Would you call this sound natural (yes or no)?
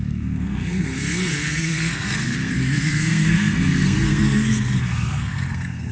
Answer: no